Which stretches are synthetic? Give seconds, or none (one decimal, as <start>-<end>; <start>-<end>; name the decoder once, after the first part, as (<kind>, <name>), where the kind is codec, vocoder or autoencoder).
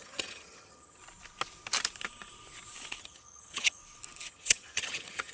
0.0-1.0 (vocoder, HiFi-GAN); 3.0-3.8; 4.3-5.3